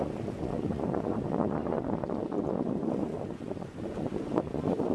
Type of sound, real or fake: fake